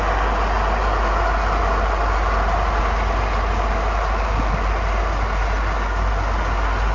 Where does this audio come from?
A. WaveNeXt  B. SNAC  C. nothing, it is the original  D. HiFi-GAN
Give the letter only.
C